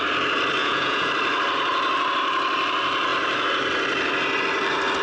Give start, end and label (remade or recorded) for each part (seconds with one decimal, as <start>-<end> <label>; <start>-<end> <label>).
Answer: 0.0-0.6 recorded; 0.6-1.1 remade; 1.1-5.0 recorded